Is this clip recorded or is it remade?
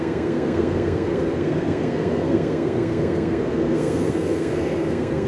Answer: remade